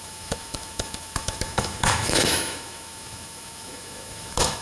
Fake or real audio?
fake